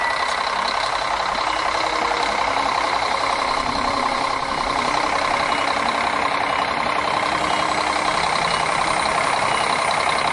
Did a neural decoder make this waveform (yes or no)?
no